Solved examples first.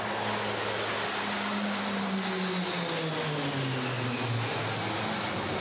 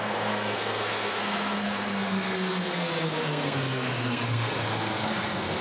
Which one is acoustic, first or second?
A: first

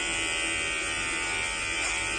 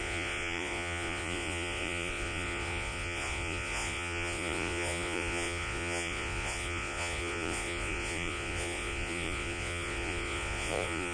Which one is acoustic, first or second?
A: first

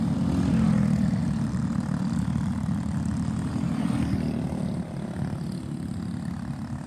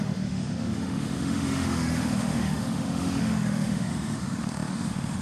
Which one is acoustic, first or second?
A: first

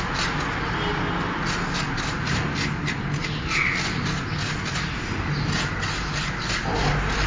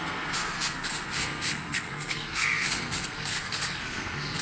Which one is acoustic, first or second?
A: first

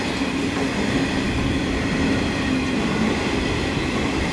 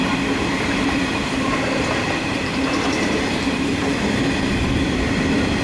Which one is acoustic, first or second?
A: first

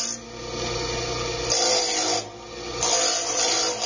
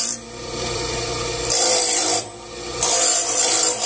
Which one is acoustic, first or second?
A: first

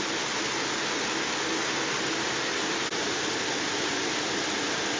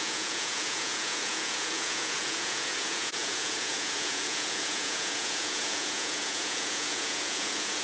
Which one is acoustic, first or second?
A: first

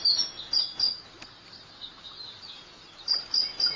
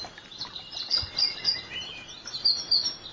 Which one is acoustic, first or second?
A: first